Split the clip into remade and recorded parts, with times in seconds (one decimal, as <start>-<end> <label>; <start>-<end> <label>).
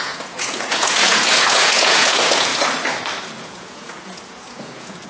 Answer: 0.0-2.5 remade; 2.5-3.4 recorded; 3.4-5.1 remade